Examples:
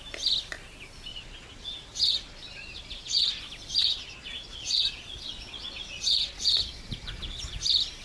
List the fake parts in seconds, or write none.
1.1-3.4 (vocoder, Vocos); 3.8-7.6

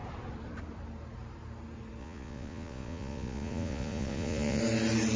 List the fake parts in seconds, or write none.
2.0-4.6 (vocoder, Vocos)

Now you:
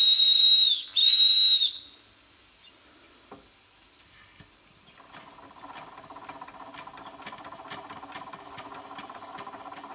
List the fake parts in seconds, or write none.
none

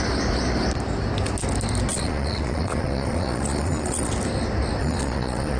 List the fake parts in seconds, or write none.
1.9-4.1 (vocoder, Vocos); 4.8-5.6